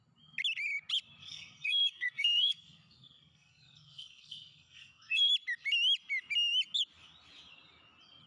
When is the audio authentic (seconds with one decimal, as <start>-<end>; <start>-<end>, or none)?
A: 0.0-1.2; 5.3-8.3